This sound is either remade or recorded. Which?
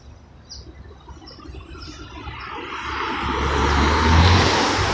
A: recorded